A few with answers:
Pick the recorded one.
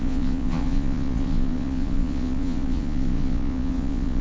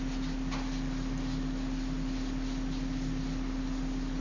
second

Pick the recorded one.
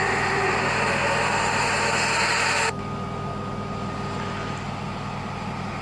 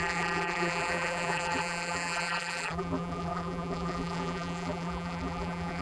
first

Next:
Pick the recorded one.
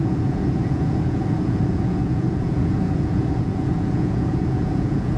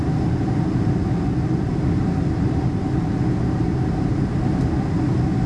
second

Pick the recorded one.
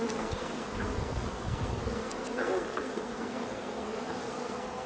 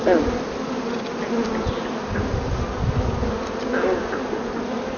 second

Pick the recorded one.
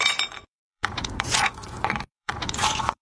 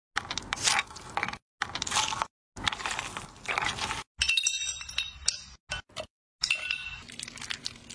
second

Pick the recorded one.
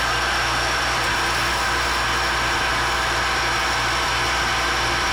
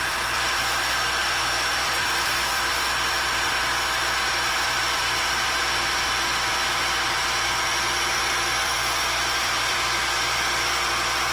first